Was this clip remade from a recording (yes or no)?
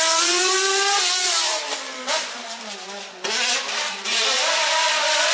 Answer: yes